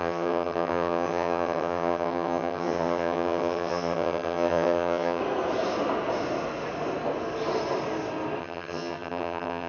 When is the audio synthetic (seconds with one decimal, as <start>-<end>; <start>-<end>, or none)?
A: 0.0-5.2; 8.4-9.7